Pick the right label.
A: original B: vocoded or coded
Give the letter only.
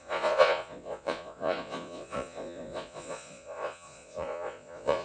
B